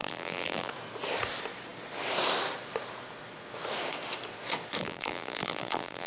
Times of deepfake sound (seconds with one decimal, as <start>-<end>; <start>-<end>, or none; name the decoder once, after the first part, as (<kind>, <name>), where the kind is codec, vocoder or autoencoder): 0.0-0.7 (vocoder, BigVGAN v2); 4.8-6.1